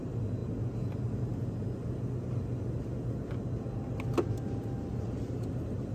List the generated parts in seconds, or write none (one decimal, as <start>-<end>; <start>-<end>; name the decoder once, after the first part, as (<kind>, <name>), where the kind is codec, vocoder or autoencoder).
none